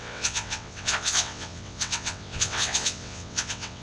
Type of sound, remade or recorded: remade